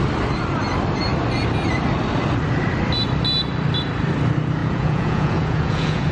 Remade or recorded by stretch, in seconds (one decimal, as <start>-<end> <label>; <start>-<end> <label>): 0.0-4.6 recorded; 4.6-6.1 remade